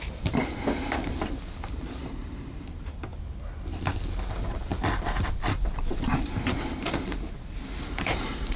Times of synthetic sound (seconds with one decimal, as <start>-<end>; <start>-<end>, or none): 0.0-3.1; 4.3-4.7; 5.5-8.6